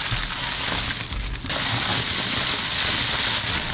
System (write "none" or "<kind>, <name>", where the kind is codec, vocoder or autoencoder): none